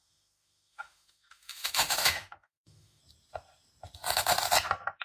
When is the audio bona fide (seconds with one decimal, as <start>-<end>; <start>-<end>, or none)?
3.0-5.0